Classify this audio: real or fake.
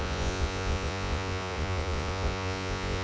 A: fake